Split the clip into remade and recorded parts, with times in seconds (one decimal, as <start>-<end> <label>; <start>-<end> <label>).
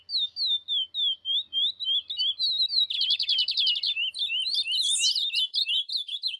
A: 0.0-6.4 recorded